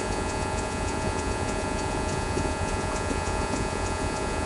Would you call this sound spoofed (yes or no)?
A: yes